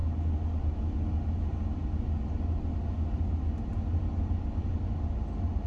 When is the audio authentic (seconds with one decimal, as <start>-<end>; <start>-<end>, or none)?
0.0-5.7